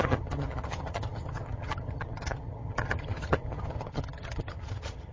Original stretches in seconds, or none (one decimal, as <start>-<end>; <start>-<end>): none